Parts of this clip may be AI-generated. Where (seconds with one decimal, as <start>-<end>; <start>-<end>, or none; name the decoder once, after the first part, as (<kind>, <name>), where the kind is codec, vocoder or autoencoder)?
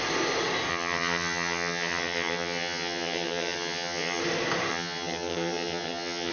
0.7-4.2 (vocoder, HiFi-GAN); 4.7-6.3